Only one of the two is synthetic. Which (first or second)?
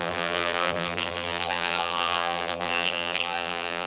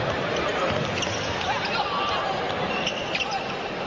first